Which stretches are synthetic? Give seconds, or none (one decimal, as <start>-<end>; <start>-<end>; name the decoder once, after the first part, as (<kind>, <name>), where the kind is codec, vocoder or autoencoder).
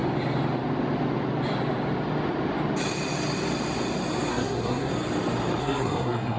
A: 4.3-4.9 (codec, SNAC); 5.6-6.4